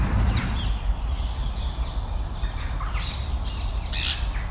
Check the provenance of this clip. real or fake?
real